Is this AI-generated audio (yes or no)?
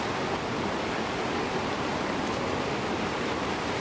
no